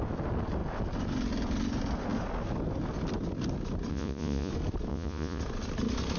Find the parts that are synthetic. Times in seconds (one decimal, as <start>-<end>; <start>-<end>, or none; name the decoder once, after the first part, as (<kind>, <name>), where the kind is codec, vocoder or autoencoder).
3.9-4.5 (vocoder, Vocos); 4.9-5.4